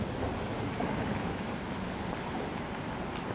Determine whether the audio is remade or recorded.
recorded